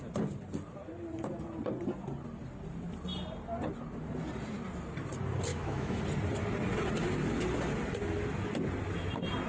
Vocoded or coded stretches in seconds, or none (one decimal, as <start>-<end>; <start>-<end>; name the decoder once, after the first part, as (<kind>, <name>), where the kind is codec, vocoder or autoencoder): 5.5-6.0 (autoencoder, DAC-VAE)